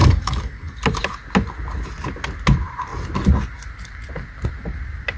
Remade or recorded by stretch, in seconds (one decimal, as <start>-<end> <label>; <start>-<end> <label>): 0.0-0.8 remade; 0.8-5.2 recorded